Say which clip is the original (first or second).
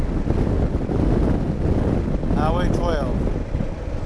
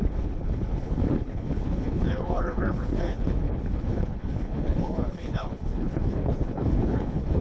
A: first